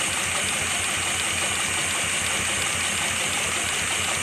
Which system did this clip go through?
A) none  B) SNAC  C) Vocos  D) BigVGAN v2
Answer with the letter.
A